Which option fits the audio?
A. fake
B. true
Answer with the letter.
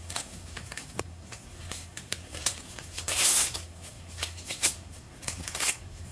A